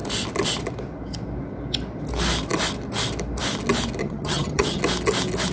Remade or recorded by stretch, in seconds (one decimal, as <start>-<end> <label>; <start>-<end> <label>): 0.0-4.0 recorded; 4.0-4.8 remade; 4.8-5.5 recorded